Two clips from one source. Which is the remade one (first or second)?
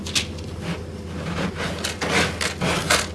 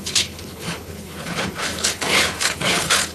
second